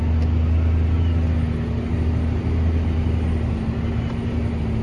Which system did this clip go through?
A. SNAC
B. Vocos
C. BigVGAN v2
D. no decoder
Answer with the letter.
D